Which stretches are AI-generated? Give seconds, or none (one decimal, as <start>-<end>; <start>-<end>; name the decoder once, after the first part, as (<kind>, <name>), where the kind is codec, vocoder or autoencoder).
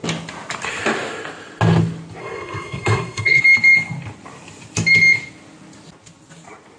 2.2-3.4 (codec, SNAC)